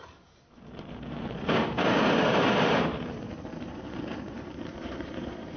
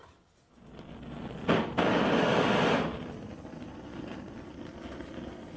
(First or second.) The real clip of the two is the second